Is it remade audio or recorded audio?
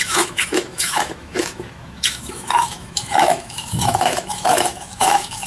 remade